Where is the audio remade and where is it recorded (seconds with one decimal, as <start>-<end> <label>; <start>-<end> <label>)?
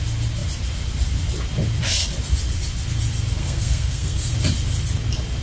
0.0-3.4 recorded; 3.4-4.3 remade; 4.3-5.4 recorded